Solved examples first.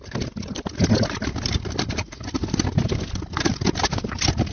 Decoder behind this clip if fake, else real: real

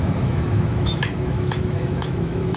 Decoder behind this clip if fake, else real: fake, autoencoder, DAC-VAE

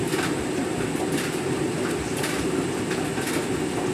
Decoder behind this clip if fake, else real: real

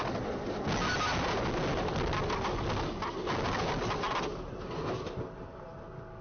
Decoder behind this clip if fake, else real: real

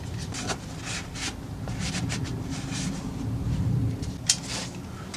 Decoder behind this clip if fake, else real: real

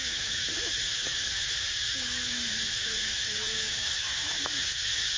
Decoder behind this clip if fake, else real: fake, autoencoder, DAC-VAE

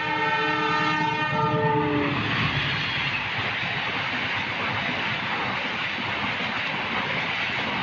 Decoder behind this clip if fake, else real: real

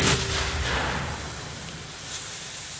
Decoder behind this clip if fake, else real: real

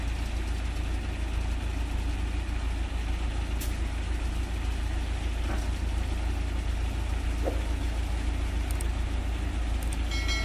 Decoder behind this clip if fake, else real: real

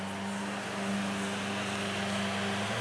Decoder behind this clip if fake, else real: real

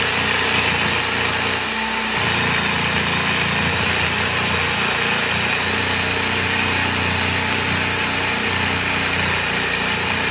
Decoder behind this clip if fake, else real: real